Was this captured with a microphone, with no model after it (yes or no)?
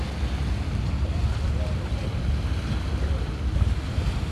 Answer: yes